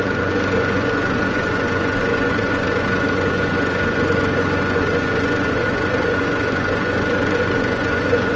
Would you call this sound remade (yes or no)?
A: yes